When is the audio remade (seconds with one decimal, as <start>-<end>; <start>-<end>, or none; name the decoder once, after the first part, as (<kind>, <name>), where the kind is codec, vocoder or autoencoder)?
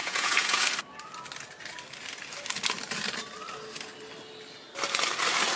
0.0-0.6 (vocoder, Vocos)